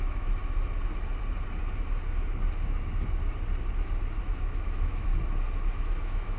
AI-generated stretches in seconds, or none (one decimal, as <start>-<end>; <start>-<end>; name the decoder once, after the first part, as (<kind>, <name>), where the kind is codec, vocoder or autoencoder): 0.0-0.4 (autoencoder, DAC-VAE); 4.2-5.1; 5.8-6.4